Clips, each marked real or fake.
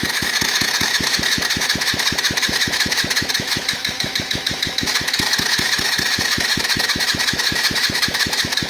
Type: fake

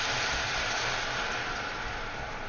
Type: real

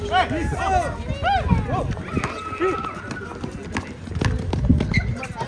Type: real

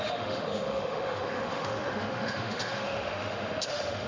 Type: fake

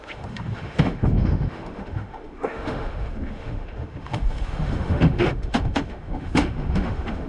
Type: fake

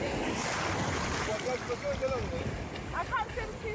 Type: real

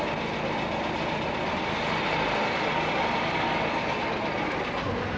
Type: real